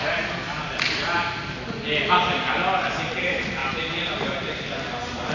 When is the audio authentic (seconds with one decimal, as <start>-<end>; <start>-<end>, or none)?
0.0-5.3